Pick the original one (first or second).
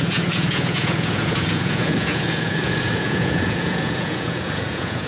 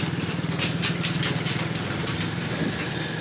second